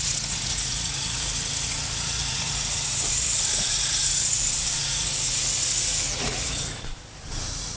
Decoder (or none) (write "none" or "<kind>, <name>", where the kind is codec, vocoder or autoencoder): vocoder, Vocos